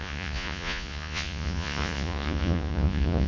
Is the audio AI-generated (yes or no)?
yes